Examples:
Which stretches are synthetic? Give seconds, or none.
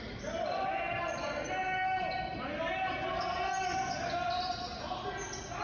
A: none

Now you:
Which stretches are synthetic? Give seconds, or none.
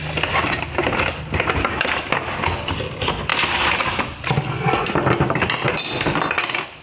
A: none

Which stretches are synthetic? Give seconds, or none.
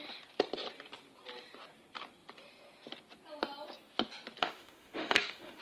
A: 4.4-5.6 (autoencoder, DAC-VAE)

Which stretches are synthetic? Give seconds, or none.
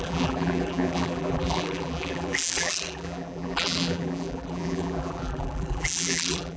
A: 0.0-6.6 (vocoder, BigVGAN v2)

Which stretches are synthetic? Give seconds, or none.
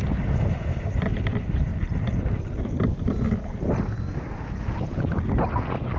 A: none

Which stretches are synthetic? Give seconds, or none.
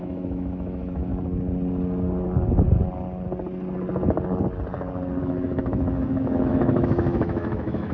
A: 0.0-1.1 (autoencoder, DAC-VAE); 5.2-7.9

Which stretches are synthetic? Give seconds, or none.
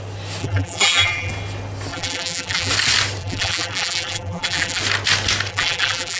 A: 0.4-1.3 (vocoder, BigVGAN v2); 1.9-2.7; 3.2-4.8; 5.5-6.2